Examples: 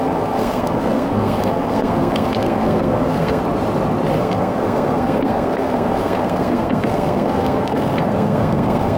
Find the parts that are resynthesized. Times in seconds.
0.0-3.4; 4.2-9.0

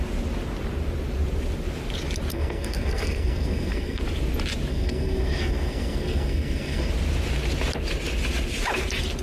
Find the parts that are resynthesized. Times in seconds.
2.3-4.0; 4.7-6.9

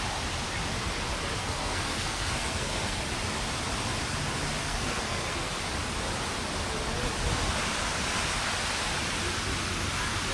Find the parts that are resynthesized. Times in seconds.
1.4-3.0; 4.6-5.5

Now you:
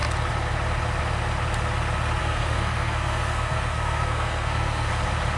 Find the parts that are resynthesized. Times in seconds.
2.2-4.9

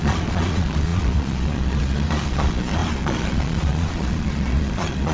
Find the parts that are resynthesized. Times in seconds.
0.0-5.1

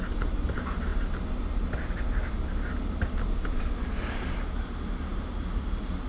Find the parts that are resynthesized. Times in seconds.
none